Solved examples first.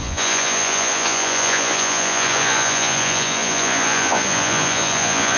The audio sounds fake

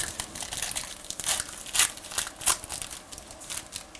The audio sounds real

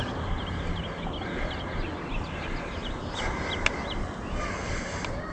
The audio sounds real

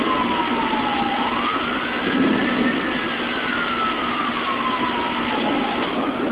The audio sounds real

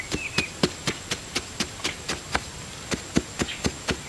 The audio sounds real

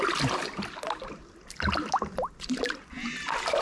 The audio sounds real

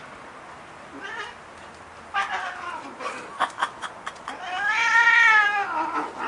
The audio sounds real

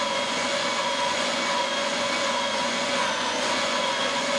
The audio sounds fake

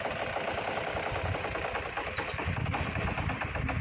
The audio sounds real